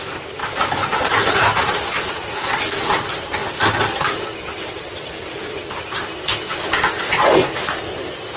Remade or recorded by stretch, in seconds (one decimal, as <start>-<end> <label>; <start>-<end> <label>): 0.0-0.4 recorded; 0.4-1.3 remade; 1.3-8.4 recorded